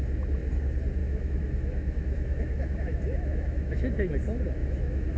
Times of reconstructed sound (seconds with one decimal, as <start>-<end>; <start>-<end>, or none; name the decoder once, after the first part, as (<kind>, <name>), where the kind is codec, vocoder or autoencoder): 1.0-4.1 (autoencoder, DAC-VAE); 4.6-5.2